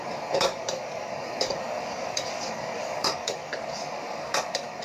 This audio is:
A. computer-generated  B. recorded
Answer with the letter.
A